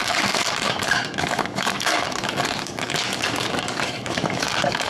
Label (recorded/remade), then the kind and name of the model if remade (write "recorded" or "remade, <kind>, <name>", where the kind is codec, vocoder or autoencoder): remade, codec, DAC